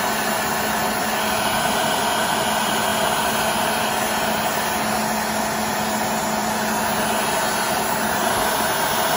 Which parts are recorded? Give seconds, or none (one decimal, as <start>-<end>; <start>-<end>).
0.0-9.2